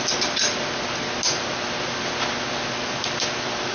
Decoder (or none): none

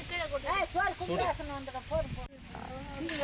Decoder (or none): none